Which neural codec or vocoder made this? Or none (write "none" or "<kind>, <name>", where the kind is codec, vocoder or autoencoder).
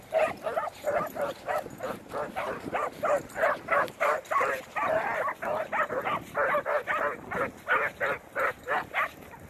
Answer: none